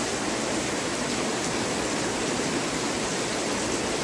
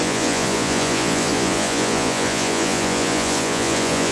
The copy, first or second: second